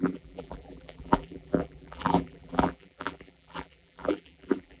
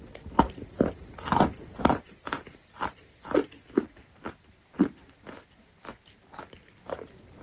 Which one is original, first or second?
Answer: second